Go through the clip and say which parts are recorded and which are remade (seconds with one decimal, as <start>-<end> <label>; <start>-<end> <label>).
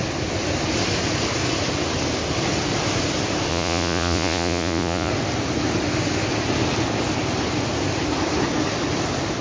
0.0-3.5 recorded; 3.5-5.1 remade; 5.1-9.4 recorded